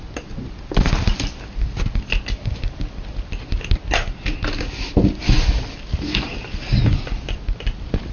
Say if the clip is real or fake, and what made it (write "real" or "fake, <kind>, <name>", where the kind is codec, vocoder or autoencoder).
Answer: real